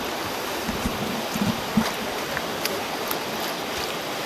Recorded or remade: recorded